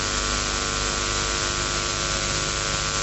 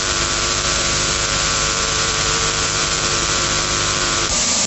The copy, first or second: second